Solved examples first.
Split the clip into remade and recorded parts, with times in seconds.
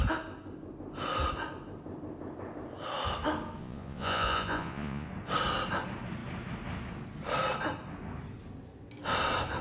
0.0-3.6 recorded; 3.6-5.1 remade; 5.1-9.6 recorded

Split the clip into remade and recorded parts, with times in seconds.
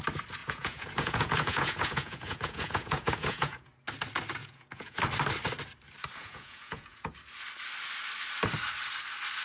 0.0-0.4 recorded; 0.4-3.7 remade; 3.7-4.4 recorded; 4.4-5.0 remade; 5.0-6.2 recorded; 6.2-7.1 remade; 7.1-9.4 recorded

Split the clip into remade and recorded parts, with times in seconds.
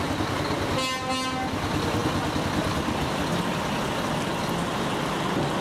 0.0-5.6 recorded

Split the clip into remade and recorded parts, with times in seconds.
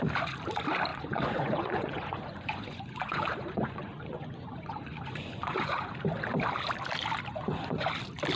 0.0-0.9 recorded; 0.9-5.9 remade; 5.9-7.3 recorded; 7.3-7.9 remade; 7.9-8.4 recorded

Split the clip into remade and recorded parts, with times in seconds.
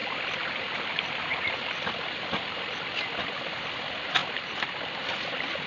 0.0-5.7 recorded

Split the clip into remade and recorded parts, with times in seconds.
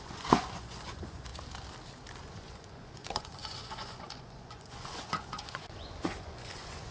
0.0-1.3 remade; 1.3-2.2 recorded; 2.2-6.9 remade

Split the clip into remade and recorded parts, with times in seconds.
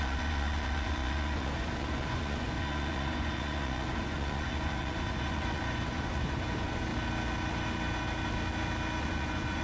0.0-6.9 remade; 6.9-9.0 recorded; 9.0-9.6 remade